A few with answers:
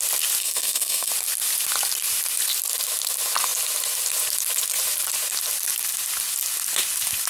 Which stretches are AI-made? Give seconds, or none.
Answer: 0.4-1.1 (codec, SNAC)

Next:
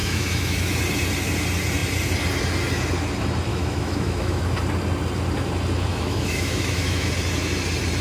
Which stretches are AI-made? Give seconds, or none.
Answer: 0.0-0.8 (autoencoder, DAC-VAE); 3.5-4.4; 5.9-7.1